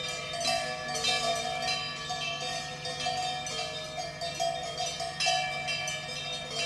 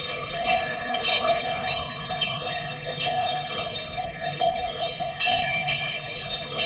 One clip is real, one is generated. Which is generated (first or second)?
second